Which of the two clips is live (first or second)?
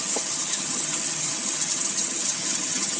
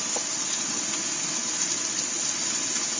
second